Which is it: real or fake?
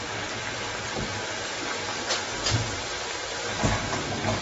real